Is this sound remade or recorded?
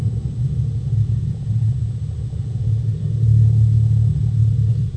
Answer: recorded